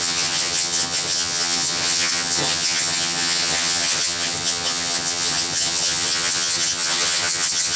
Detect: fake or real fake